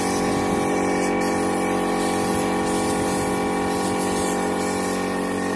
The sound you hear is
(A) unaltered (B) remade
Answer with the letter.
A